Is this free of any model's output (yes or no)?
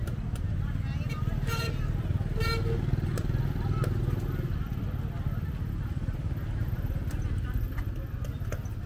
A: yes